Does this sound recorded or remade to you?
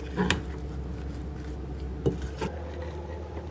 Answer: recorded